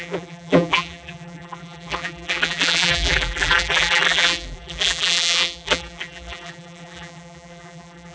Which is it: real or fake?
fake